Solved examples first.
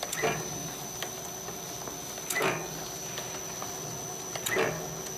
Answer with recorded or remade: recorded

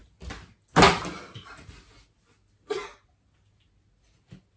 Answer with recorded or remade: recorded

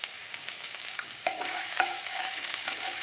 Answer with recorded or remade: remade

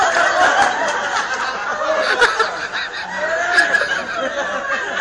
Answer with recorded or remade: recorded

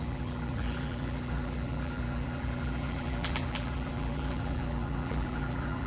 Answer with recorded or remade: remade